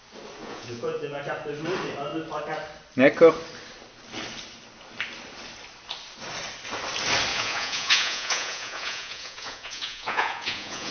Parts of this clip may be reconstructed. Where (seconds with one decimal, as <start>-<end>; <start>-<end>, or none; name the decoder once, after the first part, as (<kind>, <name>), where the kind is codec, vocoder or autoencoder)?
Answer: 0.4-1.2 (vocoder, Vocos); 7.3-10.9